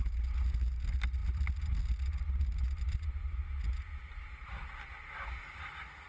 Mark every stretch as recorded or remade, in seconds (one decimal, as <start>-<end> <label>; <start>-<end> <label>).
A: 0.0-6.1 recorded